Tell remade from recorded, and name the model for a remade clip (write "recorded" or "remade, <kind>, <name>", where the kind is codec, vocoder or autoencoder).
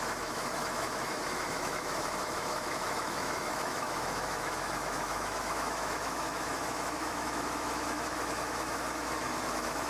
remade, autoencoder, DAC-VAE